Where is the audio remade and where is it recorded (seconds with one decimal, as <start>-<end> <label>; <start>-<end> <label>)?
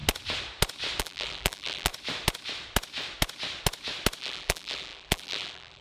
0.0-1.0 recorded; 1.0-1.9 remade; 1.9-4.2 recorded; 4.2-5.8 remade